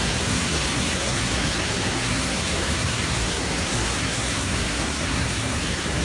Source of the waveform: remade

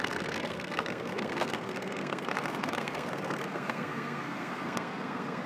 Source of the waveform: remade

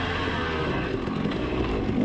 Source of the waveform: recorded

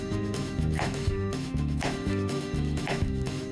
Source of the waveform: remade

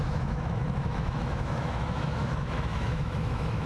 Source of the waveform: remade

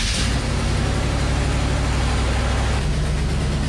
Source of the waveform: recorded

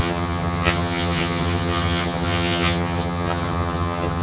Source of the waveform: remade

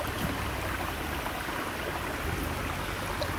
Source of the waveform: recorded